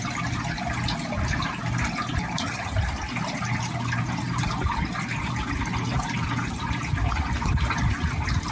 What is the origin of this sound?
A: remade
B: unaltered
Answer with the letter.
B